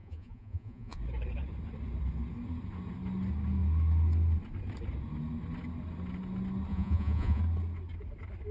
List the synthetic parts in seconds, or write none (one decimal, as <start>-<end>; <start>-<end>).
0.0-1.0; 6.7-7.4